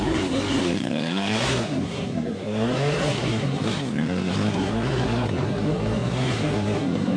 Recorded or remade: remade